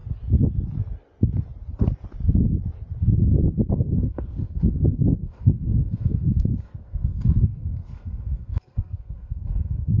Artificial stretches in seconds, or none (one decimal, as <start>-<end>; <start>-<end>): 3.7-10.0